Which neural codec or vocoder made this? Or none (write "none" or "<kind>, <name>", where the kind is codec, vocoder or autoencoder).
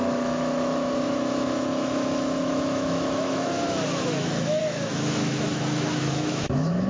autoencoder, DAC-VAE